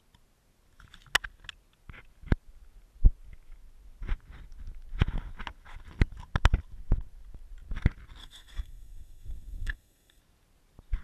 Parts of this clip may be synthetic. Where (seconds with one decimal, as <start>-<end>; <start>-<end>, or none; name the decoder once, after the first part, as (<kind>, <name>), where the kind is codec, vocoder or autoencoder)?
8.2-10.2 (codec, SNAC)